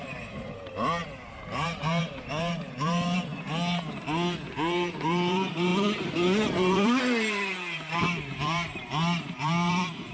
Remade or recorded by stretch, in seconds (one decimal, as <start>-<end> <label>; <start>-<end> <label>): 0.0-3.3 remade; 3.3-4.5 recorded; 4.5-10.1 remade